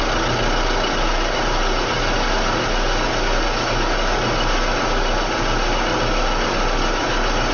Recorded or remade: recorded